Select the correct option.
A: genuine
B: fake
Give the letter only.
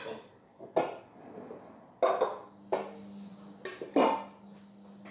A